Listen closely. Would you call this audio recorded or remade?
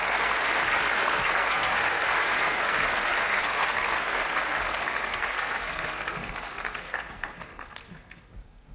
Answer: remade